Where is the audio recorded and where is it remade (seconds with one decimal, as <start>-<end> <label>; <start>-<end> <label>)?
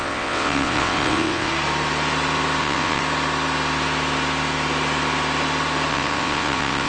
0.0-1.5 remade; 1.5-2.6 recorded; 2.6-3.0 remade; 3.0-5.9 recorded; 5.9-6.9 remade